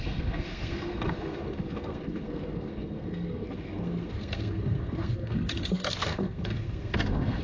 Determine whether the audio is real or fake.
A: fake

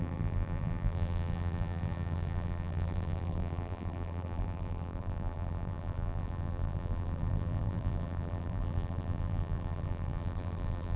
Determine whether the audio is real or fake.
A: fake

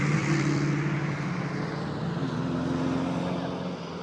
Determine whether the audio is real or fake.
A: real